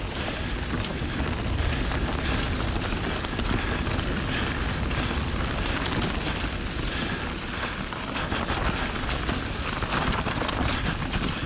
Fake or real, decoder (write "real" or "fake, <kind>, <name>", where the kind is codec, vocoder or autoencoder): real